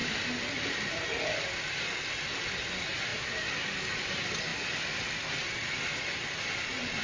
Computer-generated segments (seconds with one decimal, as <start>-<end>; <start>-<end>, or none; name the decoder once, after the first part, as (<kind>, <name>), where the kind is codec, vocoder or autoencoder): none